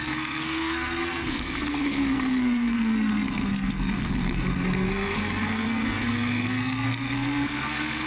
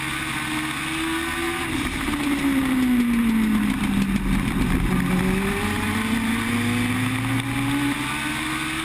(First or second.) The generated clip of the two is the first